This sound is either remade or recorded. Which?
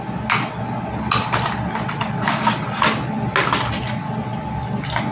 recorded